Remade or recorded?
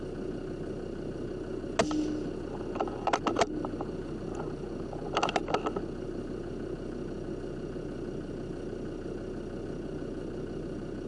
recorded